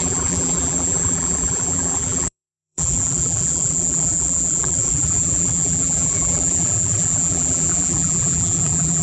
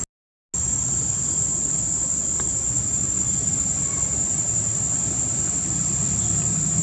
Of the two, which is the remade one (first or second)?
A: first